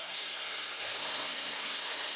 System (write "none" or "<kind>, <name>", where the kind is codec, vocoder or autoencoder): codec, SNAC